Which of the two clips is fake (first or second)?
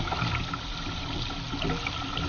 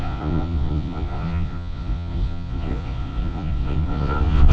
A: second